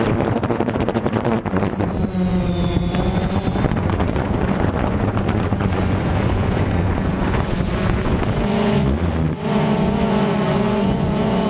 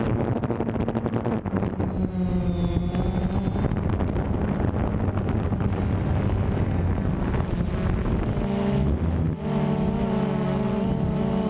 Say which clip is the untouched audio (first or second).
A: second